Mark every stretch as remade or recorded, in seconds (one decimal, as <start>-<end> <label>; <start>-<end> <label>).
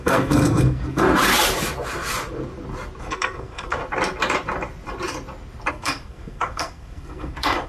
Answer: 0.0-1.0 remade; 1.0-3.0 recorded; 3.0-3.8 remade; 3.8-5.7 recorded; 5.7-7.7 remade